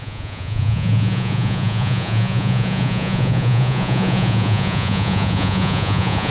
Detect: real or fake fake